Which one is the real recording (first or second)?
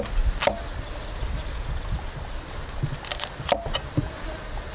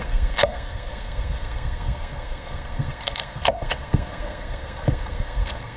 first